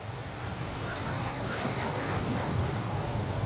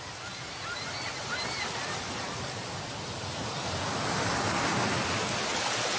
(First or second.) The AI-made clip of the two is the first